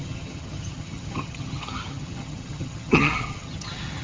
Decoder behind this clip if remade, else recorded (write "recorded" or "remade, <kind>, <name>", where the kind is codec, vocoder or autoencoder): remade, vocoder, HiFi-GAN